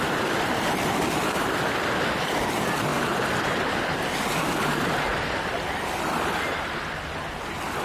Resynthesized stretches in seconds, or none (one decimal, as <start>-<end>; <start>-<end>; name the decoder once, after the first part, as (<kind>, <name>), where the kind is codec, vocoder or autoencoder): 5.1-7.2 (vocoder, BigVGAN v2)